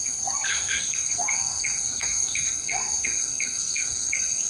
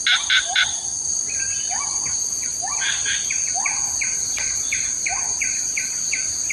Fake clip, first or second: first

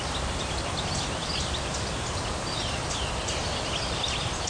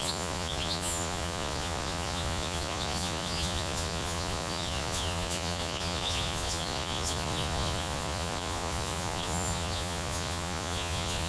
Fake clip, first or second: second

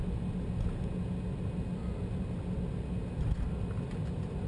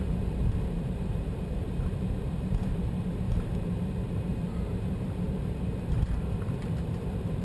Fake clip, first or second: second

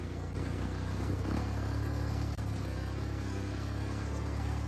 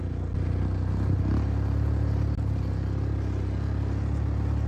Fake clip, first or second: first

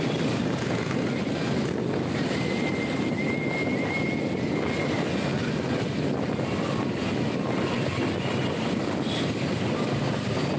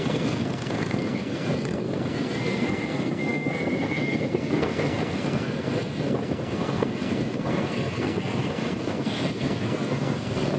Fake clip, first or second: second